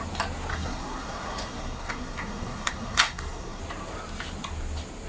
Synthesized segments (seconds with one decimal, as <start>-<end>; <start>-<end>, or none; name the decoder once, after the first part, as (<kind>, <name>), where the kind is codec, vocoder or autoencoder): 0.5-3.6 (codec, SNAC)